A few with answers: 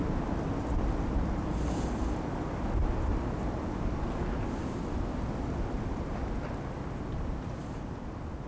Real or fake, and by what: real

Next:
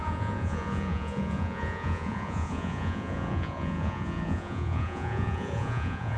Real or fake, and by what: fake, vocoder, Vocos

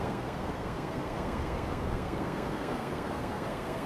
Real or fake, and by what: fake, codec, SNAC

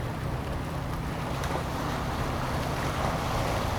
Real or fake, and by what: real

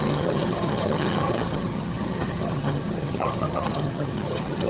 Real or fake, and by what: fake, vocoder, HiFi-GAN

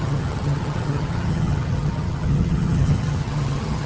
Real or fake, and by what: fake, vocoder, HiFi-GAN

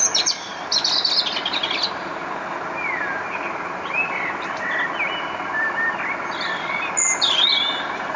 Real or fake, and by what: real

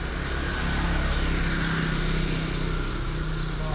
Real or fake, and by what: real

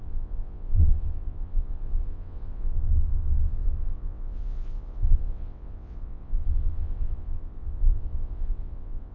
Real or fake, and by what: fake, vocoder, WaveNeXt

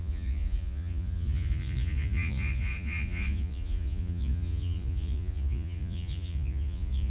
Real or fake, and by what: fake, vocoder, Vocos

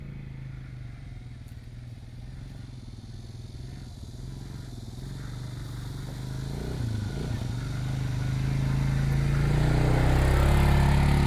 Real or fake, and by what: real